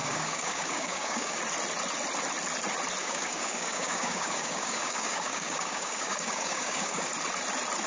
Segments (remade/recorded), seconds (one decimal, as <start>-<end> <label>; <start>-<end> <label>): 0.0-1.4 remade; 1.4-3.0 recorded; 3.0-7.1 remade; 7.1-7.9 recorded